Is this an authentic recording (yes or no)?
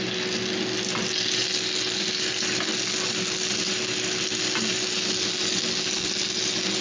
yes